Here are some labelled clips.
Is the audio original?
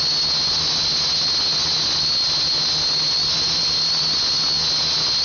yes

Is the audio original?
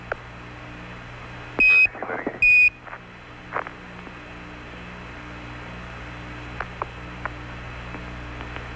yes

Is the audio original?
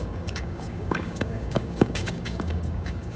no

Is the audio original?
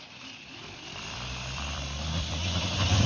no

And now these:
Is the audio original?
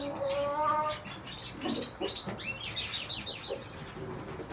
yes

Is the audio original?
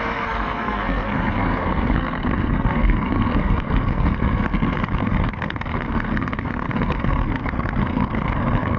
no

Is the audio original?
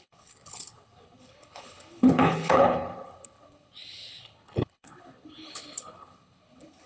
no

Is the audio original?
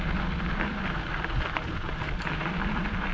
no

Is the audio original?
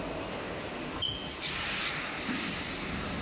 yes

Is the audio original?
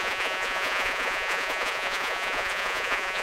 no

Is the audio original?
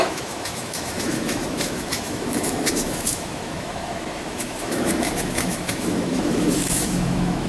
no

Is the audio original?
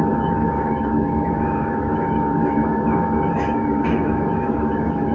no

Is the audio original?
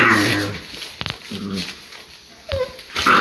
yes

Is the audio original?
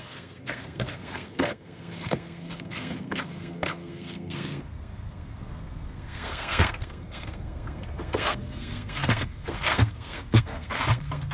no